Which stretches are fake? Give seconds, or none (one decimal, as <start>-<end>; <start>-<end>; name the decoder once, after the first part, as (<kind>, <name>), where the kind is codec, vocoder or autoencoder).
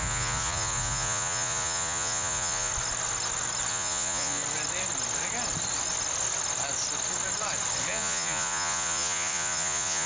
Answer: 0.0-2.7 (vocoder, Vocos); 3.7-4.4; 7.9-10.1